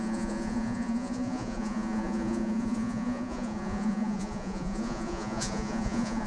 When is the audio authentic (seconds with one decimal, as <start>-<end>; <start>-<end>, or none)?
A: none